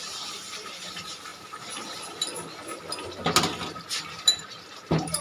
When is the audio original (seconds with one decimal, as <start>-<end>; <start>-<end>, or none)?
1.3-4.0